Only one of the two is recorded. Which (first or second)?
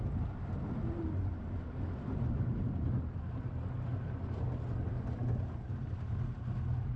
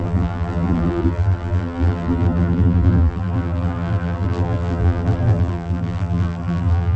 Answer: first